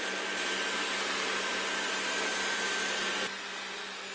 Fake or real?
real